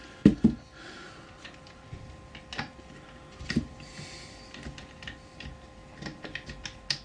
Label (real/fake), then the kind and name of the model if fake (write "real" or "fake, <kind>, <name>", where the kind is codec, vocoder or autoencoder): real